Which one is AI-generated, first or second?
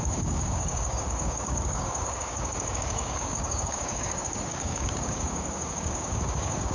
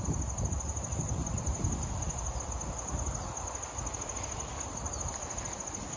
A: first